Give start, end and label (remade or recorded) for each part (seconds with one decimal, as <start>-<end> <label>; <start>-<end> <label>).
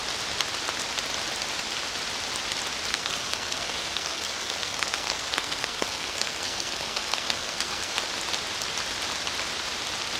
0.0-2.9 recorded; 2.9-8.0 remade; 8.0-10.2 recorded